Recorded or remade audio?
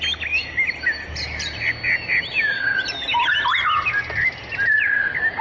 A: recorded